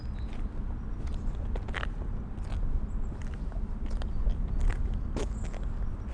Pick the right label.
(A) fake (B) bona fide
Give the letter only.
B